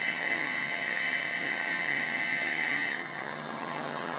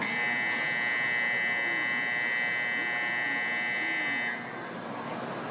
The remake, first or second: first